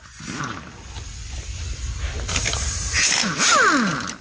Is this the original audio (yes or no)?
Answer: yes